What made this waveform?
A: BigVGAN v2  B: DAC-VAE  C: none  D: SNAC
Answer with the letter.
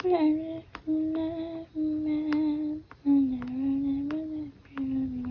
C